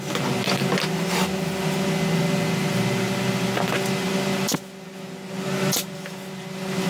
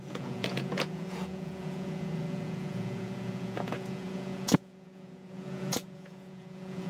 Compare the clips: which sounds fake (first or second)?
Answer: second